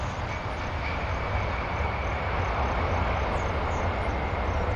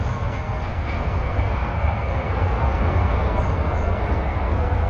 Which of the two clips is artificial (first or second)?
second